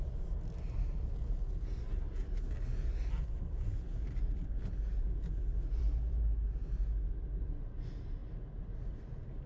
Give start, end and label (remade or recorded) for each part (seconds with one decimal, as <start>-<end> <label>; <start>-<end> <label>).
0.0-9.5 recorded